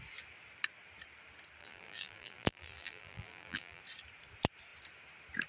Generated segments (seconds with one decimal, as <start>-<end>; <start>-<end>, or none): 1.6-3.8